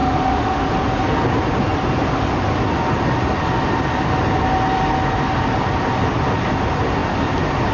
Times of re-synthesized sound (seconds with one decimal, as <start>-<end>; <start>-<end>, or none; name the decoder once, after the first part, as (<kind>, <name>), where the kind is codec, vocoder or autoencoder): 0.0-0.7 (autoencoder, DAC-VAE)